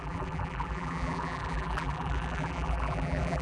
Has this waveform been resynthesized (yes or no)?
yes